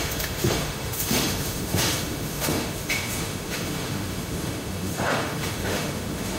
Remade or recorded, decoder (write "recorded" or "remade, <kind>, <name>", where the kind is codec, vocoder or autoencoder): remade, autoencoder, DAC-VAE